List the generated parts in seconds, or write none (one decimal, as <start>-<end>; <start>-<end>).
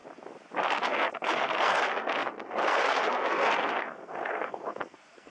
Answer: 0.6-5.3